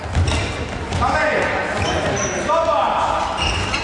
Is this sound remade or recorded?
recorded